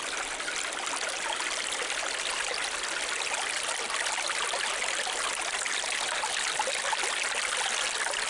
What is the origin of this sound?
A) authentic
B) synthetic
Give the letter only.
A